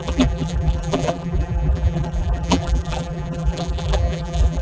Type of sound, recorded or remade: remade